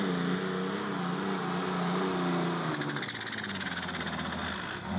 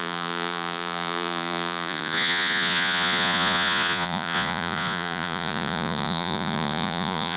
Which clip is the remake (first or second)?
second